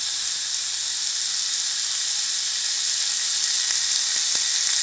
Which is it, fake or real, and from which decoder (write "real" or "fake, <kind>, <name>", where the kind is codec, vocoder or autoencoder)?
real